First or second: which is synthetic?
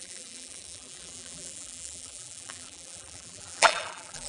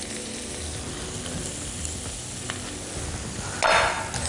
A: first